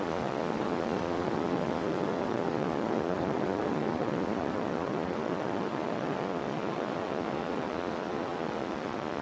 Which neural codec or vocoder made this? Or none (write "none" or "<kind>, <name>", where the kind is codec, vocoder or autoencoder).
vocoder, Vocos